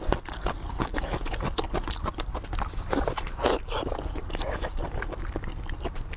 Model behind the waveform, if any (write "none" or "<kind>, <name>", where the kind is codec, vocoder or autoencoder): none